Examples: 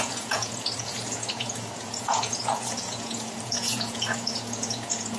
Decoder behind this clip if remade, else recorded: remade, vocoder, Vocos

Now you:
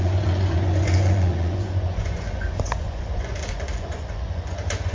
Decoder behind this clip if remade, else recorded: remade, vocoder, Vocos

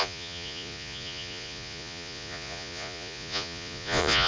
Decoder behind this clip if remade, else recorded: remade, vocoder, Vocos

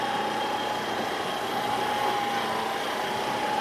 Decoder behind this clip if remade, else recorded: recorded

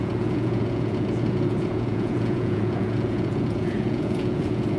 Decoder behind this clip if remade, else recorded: remade, vocoder, Vocos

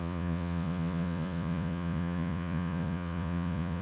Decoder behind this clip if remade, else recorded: remade, vocoder, Vocos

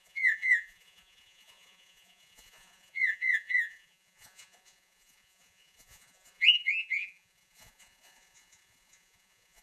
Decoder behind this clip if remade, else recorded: remade, vocoder, Vocos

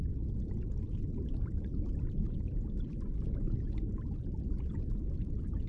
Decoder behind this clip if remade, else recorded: recorded